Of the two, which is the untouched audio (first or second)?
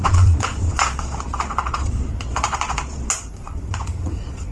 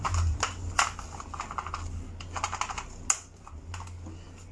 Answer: second